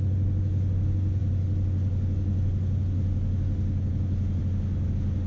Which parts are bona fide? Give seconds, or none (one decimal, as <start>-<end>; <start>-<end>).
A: 0.0-5.3